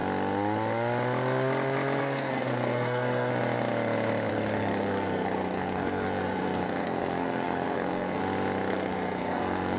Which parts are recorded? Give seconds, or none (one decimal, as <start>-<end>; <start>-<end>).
0.0-2.0; 3.3-4.3; 8.2-8.7